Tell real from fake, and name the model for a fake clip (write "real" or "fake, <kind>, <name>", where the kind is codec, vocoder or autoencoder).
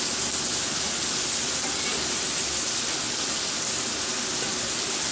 real